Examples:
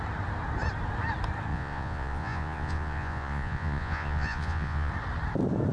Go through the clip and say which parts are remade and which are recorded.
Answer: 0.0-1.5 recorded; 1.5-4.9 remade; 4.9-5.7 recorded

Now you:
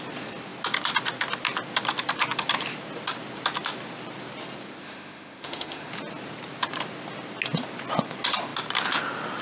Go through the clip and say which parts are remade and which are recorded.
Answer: 0.0-4.8 recorded; 4.8-5.9 remade; 5.9-9.4 recorded

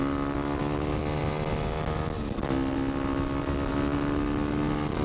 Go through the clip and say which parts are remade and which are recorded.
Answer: 0.0-5.0 recorded

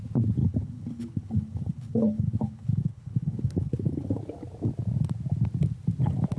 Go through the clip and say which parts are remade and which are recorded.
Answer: 0.0-0.4 recorded; 0.4-4.2 remade; 4.2-6.4 recorded

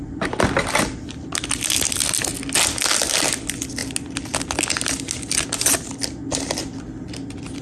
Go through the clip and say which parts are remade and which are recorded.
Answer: 0.0-7.6 recorded